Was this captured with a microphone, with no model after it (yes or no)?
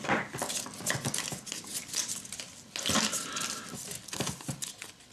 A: yes